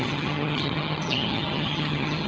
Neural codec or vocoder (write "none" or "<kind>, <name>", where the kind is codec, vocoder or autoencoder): vocoder, HiFi-GAN